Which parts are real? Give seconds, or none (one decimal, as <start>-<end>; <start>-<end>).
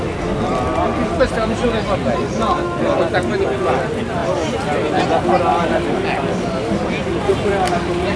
0.0-8.2